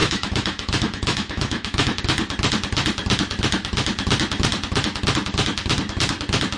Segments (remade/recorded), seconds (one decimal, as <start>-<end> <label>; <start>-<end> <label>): 0.0-2.0 remade; 2.0-6.6 recorded